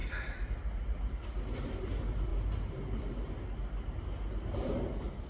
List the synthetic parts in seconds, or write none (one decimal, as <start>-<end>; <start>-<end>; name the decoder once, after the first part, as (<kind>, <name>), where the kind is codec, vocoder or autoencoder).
0.0-1.8 (vocoder, BigVGAN v2); 2.3-3.3